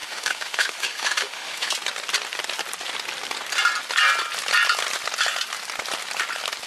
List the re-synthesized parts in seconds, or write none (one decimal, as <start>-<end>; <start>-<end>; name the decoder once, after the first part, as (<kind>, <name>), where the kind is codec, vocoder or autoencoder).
0.0-1.7 (autoencoder, DAC-VAE)